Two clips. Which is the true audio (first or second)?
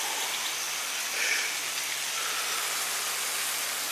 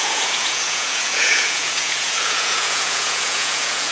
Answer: first